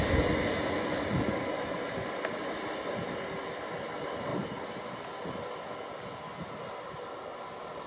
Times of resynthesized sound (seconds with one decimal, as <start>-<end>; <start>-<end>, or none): none